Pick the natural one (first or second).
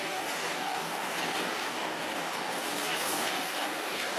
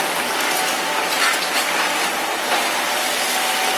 second